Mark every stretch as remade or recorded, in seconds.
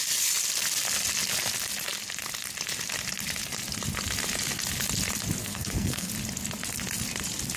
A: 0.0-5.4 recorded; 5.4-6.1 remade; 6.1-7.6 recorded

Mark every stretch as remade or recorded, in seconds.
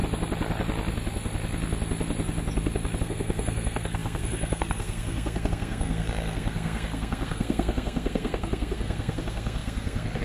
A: 0.0-3.0 recorded; 3.0-10.2 remade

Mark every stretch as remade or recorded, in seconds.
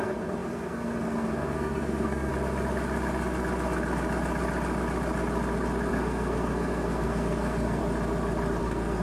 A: 0.0-2.3 remade; 2.3-5.9 recorded; 5.9-7.8 remade; 7.8-8.6 recorded; 8.6-9.0 remade